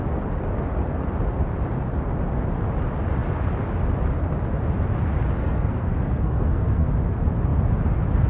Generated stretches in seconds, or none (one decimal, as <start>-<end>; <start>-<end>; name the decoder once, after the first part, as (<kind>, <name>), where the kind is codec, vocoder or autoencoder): 5.4-6.9 (codec, SNAC)

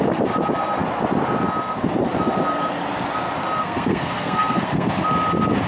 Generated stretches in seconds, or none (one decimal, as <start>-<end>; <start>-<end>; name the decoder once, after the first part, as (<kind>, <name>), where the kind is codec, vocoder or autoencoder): 3.6-4.9 (codec, SNAC)

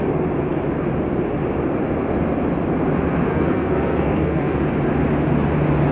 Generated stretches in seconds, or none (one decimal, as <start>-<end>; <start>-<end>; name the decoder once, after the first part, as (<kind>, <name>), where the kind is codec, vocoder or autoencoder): 3.3-4.6 (codec, SNAC)

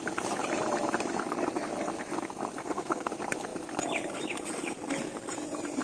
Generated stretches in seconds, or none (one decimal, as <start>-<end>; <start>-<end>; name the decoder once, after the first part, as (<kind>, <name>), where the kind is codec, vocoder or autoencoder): 2.6-3.1 (codec, SNAC)

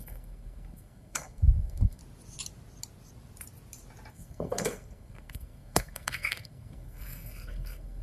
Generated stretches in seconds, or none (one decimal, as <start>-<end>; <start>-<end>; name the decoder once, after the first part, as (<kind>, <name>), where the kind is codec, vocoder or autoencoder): 0.0-2.0 (codec, SNAC); 4.1-8.0

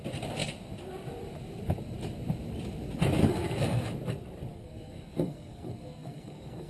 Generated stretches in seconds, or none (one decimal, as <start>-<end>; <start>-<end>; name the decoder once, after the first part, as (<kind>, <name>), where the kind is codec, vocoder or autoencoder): 3.2-3.9 (codec, SNAC); 4.5-6.7

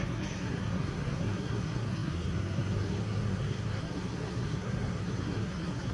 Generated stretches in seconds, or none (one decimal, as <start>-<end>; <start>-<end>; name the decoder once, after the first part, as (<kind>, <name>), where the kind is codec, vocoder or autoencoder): 0.0-5.9 (codec, SNAC)

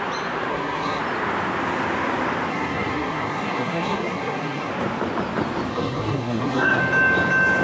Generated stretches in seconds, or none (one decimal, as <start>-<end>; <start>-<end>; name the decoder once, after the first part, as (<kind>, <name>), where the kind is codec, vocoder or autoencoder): 0.5-1.0 (codec, SNAC); 2.5-4.7; 5.7-6.8